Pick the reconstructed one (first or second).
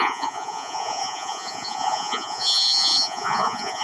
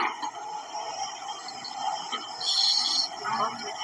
first